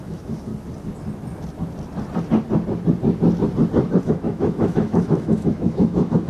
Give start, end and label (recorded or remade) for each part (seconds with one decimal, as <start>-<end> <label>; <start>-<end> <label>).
0.0-0.5 remade; 0.5-4.0 recorded; 4.0-6.3 remade